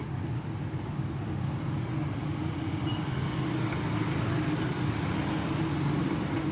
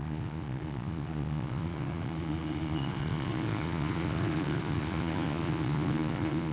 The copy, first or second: second